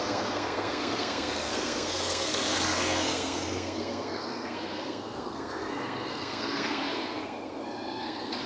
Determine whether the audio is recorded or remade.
remade